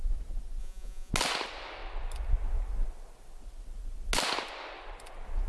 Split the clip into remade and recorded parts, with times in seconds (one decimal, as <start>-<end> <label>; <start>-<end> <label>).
0.0-0.6 recorded; 0.6-1.1 remade; 1.1-5.5 recorded